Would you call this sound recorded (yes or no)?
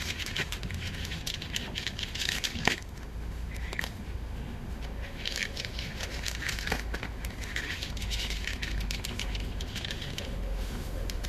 no